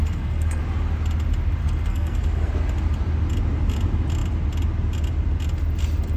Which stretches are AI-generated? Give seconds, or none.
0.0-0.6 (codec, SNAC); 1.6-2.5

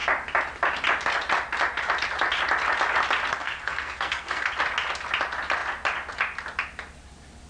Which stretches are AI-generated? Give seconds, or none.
3.4-4.5 (codec, SNAC)

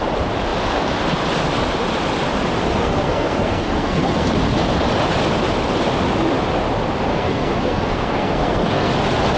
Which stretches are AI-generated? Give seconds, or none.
2.6-4.3 (codec, SNAC); 7.1-8.9